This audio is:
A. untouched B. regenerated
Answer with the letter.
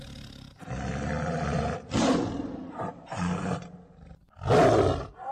A